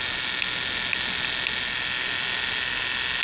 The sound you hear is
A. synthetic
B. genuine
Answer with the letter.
B